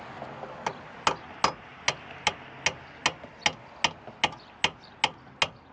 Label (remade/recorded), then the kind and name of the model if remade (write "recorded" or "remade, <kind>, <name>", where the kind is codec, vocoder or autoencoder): recorded